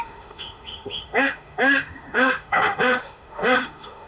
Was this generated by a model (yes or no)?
yes